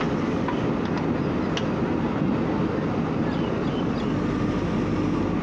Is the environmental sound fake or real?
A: real